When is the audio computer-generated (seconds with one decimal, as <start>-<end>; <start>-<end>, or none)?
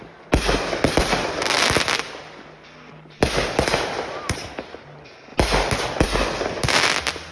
none